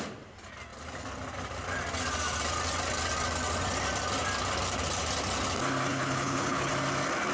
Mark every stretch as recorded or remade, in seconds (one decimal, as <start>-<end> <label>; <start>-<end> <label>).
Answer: 0.0-5.9 recorded; 5.9-6.7 remade; 6.7-7.3 recorded